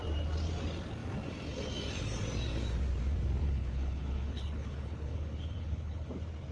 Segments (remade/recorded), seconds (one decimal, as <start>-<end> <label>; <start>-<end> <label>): 0.0-3.4 recorded; 3.4-6.1 remade; 6.1-6.5 recorded